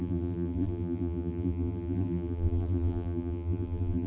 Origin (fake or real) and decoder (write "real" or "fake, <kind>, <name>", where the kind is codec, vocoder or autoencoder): fake, vocoder, BigVGAN v2